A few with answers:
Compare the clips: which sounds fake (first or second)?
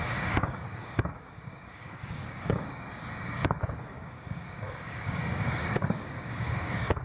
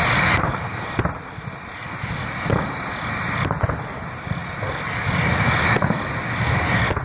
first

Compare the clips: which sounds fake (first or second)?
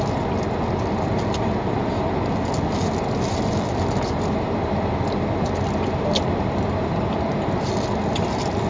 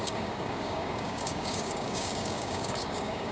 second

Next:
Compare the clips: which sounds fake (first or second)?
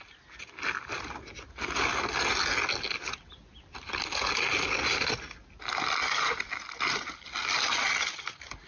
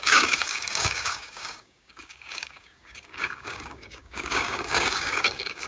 second